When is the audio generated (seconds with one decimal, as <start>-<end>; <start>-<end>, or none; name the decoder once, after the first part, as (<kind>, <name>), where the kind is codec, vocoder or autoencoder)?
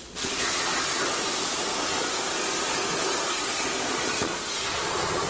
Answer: 0.0-0.7 (vocoder, Vocos); 3.9-5.3